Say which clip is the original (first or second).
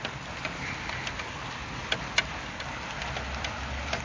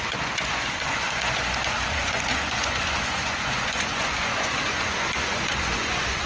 first